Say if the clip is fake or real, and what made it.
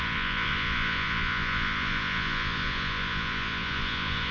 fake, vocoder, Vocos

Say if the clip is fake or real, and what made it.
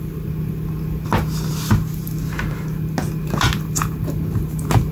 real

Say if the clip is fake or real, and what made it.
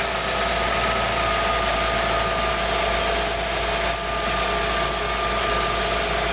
real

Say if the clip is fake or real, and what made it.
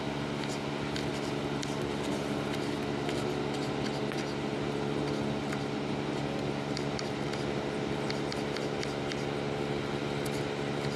real